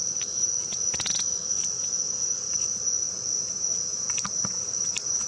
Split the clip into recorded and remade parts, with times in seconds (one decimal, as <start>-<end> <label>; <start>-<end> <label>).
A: 0.0-5.3 recorded